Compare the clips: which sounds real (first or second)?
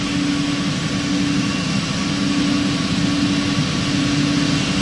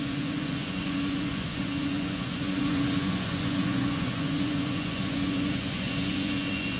first